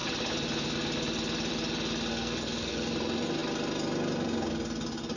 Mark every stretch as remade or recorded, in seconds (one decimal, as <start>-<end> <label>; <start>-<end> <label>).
0.0-2.1 recorded; 2.1-2.9 remade; 2.9-5.2 recorded